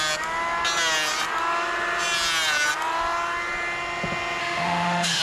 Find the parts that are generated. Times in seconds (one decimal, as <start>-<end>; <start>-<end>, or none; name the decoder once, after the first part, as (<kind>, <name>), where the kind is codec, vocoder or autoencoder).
4.4-5.2 (autoencoder, DAC-VAE)